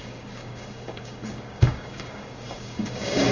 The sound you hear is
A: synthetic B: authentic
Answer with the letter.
A